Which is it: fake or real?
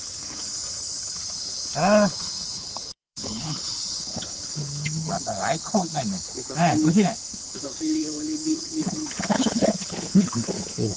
fake